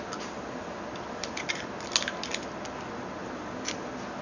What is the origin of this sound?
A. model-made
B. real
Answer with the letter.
B